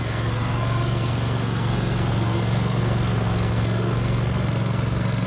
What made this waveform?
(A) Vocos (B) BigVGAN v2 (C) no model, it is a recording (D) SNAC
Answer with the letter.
D